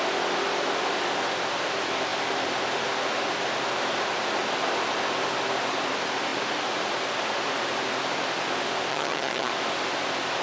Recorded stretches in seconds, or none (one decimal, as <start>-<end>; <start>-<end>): 0.0-8.9; 9.5-10.4